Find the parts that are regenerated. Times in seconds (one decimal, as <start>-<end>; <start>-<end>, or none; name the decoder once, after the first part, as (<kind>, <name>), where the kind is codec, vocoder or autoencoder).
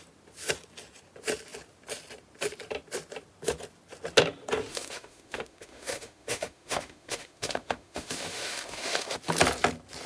4.7-9.2 (autoencoder, DAC-VAE)